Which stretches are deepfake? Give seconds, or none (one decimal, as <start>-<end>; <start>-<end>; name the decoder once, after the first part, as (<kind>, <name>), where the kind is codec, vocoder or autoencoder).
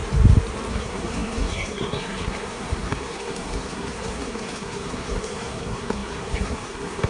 0.7-7.1 (codec, SNAC)